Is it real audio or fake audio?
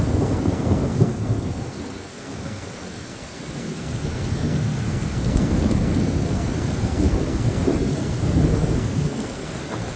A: fake